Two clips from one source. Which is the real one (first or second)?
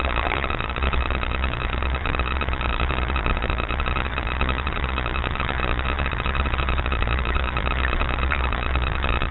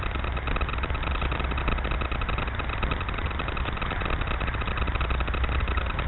second